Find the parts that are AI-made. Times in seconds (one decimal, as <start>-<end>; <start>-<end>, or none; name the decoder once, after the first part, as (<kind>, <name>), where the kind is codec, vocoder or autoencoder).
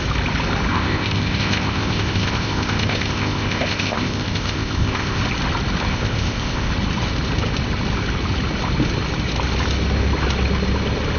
0.7-5.2 (codec, ZipCodec); 5.9-6.7